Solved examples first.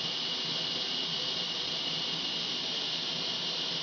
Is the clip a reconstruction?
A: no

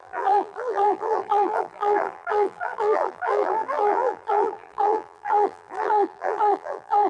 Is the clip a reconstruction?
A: yes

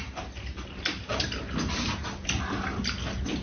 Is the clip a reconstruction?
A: no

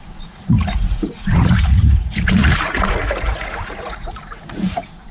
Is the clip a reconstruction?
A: yes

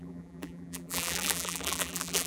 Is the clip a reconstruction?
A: yes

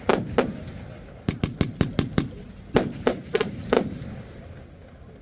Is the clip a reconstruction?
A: no